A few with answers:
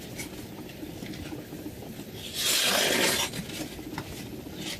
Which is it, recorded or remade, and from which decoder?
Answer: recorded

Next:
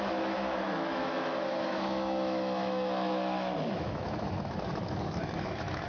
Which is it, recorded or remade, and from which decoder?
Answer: remade, autoencoder, DAC-VAE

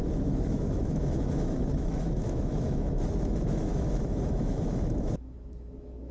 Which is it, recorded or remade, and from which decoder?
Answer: remade, autoencoder, DAC-VAE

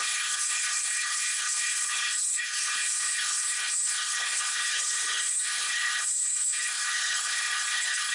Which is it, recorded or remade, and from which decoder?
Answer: remade, codec, HILCodec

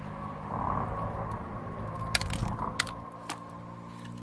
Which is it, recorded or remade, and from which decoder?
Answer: recorded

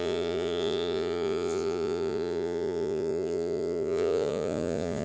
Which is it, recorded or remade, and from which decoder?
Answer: remade, vocoder, Vocos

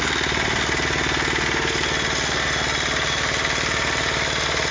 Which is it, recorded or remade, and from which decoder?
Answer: recorded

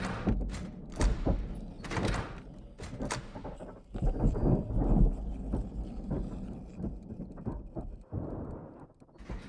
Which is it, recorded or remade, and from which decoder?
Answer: recorded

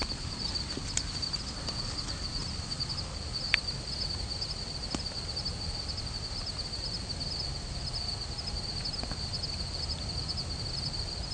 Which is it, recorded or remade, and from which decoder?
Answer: recorded